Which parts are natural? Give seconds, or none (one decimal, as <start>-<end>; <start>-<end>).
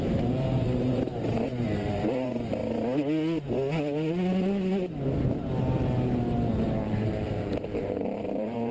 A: 2.6-6.5